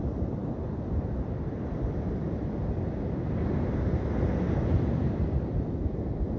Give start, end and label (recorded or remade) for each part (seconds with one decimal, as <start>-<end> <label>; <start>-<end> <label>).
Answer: 0.0-6.4 recorded

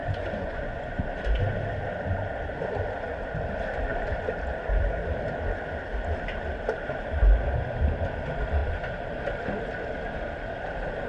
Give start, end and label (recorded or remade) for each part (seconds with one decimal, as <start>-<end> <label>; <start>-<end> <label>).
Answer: 0.0-1.0 remade; 1.0-11.1 recorded

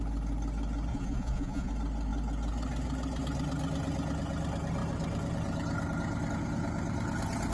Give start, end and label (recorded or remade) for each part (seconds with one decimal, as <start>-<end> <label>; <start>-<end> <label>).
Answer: 0.0-0.9 recorded; 0.9-1.7 remade; 1.7-7.5 recorded

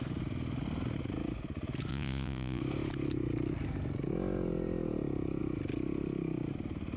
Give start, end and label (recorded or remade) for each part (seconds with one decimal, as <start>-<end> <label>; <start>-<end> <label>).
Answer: 0.0-1.9 recorded; 1.9-2.6 remade; 2.6-7.0 recorded

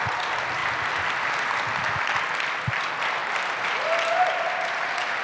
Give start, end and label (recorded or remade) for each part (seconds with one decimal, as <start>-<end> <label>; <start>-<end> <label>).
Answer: 0.0-5.2 recorded

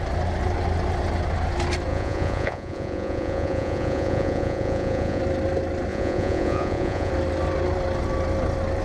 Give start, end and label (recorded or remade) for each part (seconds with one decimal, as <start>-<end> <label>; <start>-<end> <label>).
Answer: 0.0-1.9 recorded; 1.9-5.2 remade; 5.2-5.9 recorded; 5.9-7.1 remade; 7.1-8.8 recorded

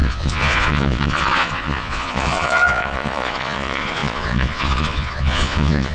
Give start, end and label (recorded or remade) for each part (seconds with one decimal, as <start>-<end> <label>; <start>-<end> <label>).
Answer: 0.0-5.9 remade